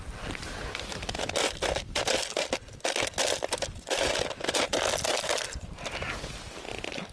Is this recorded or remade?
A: recorded